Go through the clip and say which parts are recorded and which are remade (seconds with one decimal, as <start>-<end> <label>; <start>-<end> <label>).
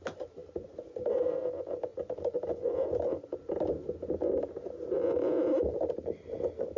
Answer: 0.0-6.8 recorded